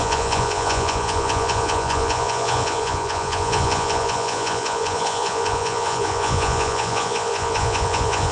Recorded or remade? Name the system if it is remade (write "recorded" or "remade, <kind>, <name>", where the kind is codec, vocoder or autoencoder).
remade, vocoder, Vocos